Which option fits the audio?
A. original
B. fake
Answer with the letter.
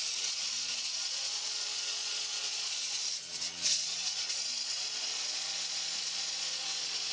B